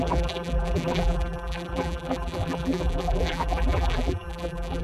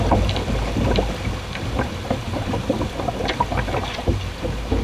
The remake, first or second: first